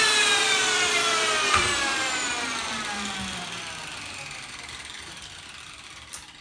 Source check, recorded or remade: remade